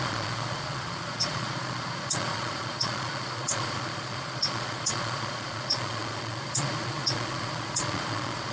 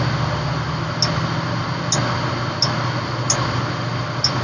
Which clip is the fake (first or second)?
first